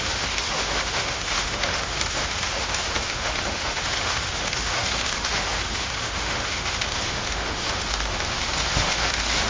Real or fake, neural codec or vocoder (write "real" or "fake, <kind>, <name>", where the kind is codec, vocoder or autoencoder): fake, autoencoder, DAC-VAE